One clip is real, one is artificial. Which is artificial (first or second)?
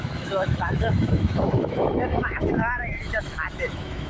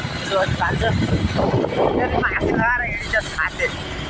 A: first